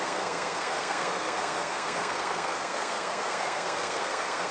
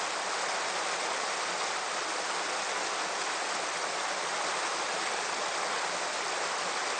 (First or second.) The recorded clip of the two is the second